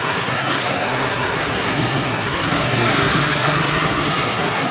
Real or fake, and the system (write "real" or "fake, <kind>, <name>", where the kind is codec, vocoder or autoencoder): fake, codec, SNAC